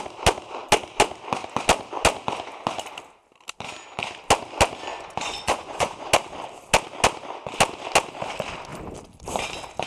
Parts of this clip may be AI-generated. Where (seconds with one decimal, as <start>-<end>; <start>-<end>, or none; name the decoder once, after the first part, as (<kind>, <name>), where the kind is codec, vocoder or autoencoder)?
4.9-6.1 (vocoder, Vocos)